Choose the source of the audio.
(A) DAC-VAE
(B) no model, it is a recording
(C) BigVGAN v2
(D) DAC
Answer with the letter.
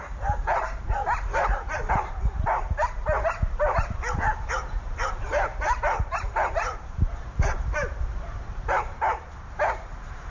C